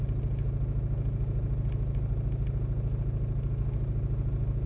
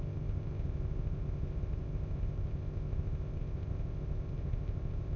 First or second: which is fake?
second